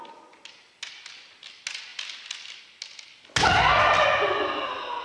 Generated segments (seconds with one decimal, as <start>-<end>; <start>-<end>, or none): none